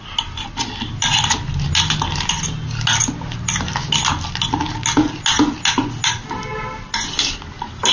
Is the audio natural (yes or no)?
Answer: yes